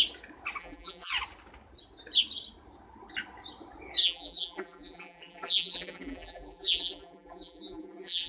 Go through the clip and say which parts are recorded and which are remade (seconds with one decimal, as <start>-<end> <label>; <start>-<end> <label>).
0.0-0.6 recorded; 0.6-1.1 remade; 1.1-4.0 recorded; 4.0-8.3 remade